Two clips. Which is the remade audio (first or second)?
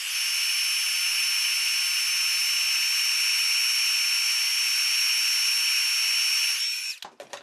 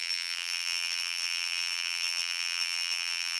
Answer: second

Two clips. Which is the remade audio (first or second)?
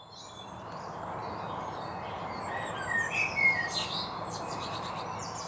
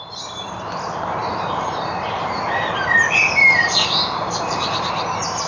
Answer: second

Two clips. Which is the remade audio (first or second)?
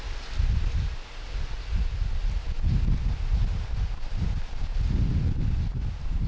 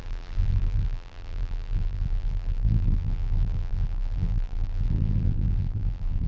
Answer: second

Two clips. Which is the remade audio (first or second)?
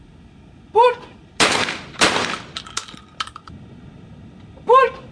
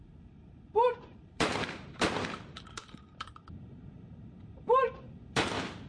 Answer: second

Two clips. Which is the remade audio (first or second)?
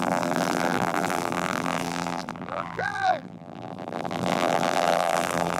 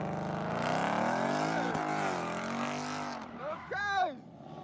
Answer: first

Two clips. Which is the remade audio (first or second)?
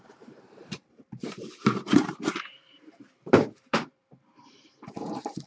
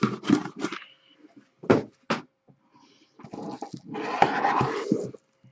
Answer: first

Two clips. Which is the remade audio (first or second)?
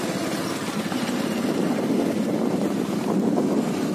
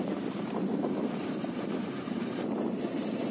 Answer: second